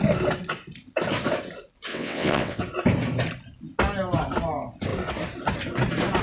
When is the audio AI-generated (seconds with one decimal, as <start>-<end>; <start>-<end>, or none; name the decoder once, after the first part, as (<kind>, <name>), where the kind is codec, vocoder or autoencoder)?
1.9-2.6 (vocoder, WaveNeXt)